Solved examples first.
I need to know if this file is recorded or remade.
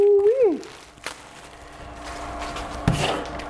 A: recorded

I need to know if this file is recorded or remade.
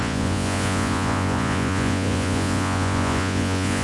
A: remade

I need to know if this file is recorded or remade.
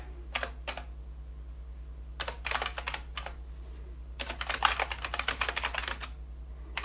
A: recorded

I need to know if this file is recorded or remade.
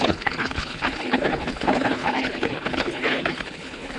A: remade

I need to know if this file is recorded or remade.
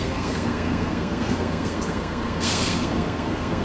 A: remade